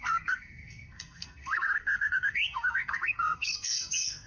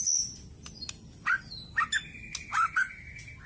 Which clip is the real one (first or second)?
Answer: second